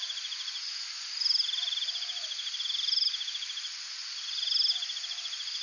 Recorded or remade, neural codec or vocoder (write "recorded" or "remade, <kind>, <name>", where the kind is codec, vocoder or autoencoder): recorded